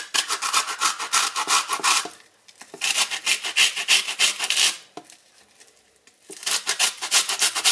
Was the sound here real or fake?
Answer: real